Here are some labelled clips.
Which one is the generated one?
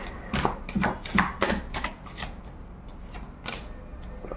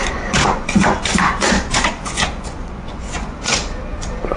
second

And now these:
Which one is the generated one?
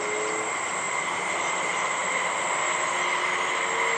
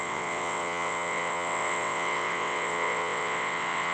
second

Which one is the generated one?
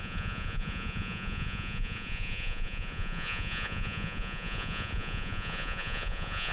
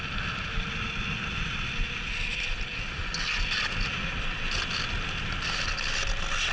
first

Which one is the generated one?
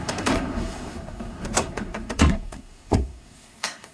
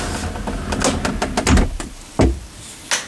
first